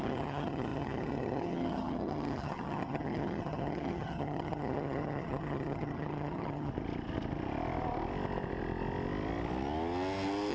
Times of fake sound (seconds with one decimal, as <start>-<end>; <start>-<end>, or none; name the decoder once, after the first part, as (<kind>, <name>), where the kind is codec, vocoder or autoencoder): 0.0-6.7 (vocoder, HiFi-GAN)